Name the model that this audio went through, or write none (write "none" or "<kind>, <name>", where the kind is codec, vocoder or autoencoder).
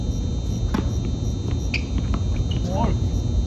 none